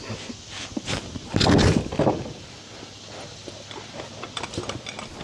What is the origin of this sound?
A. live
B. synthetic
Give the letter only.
A